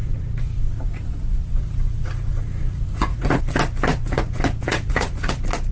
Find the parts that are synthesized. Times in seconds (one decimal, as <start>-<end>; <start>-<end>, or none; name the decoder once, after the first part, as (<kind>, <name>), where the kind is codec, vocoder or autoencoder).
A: 0.0-3.4 (vocoder, Vocos); 3.9-5.3